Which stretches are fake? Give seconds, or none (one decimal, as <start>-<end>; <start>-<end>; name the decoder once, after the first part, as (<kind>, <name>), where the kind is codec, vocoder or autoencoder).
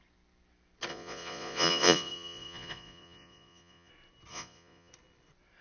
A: 0.9-3.9 (vocoder, Vocos); 4.3-4.9